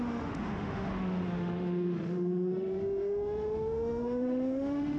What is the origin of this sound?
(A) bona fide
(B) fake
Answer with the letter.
B